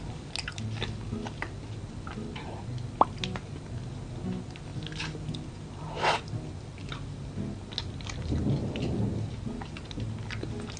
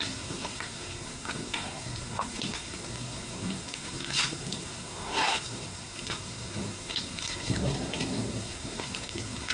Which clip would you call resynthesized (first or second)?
second